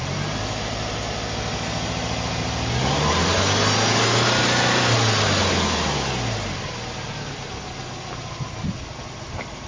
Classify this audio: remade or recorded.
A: recorded